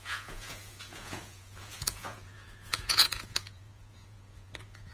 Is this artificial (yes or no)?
yes